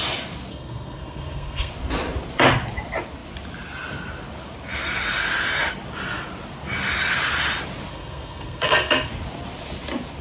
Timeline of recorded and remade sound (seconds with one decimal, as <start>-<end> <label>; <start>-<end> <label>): 0.0-0.5 recorded; 0.5-1.7 remade; 1.7-7.9 recorded; 7.9-9.1 remade; 9.1-10.2 recorded